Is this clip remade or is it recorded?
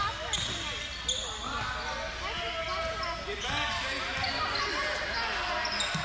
recorded